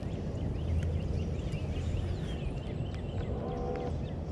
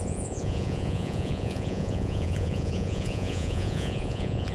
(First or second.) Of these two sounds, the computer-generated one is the second